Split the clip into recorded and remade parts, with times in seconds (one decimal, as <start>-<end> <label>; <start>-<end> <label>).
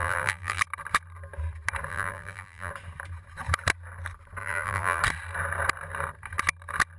0.0-0.6 remade; 0.6-1.9 recorded; 1.9-2.7 remade; 2.7-4.4 recorded; 4.4-5.0 remade; 5.0-7.0 recorded